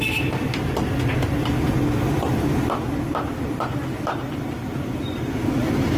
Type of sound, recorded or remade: recorded